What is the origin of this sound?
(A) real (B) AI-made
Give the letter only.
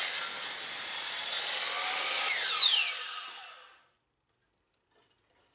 A